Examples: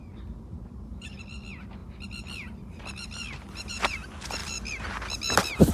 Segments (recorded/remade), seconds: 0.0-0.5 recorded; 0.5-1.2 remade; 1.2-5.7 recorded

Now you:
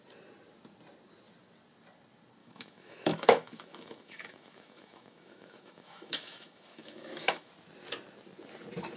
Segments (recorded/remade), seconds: 0.0-2.4 recorded; 2.4-7.5 remade; 7.5-9.0 recorded